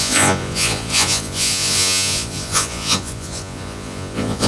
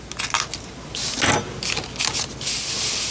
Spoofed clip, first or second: first